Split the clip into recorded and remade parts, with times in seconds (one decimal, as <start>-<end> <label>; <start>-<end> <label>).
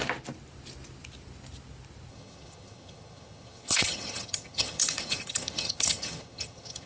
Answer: 0.0-2.1 recorded; 2.1-6.9 remade